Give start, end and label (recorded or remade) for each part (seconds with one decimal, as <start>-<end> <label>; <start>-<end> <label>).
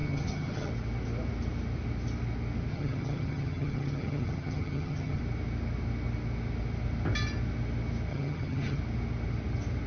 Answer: 0.0-0.7 remade; 0.7-2.7 recorded; 2.7-5.2 remade; 5.2-8.1 recorded; 8.1-8.8 remade; 8.8-9.9 recorded